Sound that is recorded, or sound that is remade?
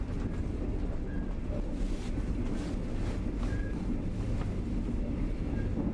recorded